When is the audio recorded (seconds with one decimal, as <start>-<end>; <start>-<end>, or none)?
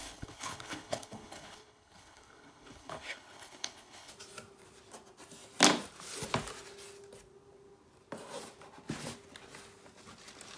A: 4.1-10.6